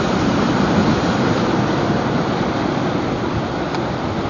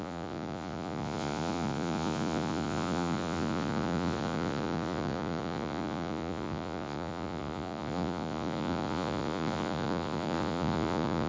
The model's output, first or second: second